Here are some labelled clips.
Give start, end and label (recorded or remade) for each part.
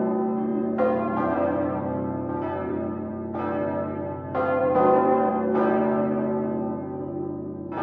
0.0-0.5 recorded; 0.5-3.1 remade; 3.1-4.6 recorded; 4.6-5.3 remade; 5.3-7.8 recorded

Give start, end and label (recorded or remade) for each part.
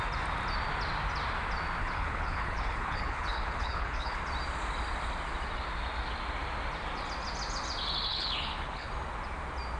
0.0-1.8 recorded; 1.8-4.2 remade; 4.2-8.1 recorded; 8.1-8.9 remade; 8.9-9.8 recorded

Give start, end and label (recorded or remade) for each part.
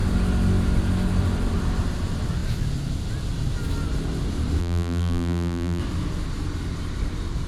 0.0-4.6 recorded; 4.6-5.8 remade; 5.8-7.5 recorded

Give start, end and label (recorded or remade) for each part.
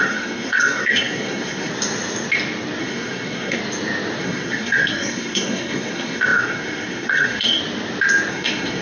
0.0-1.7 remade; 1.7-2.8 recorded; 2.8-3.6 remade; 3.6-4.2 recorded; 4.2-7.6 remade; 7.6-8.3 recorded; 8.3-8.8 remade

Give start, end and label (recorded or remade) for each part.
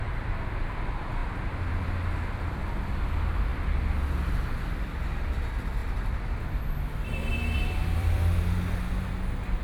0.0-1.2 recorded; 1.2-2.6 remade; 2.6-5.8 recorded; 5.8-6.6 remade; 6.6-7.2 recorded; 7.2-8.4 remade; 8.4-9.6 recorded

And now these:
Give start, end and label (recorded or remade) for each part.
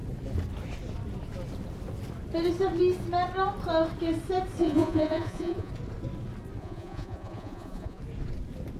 0.0-4.6 recorded; 4.6-5.7 remade; 5.7-6.6 recorded; 6.6-8.0 remade; 8.0-8.8 recorded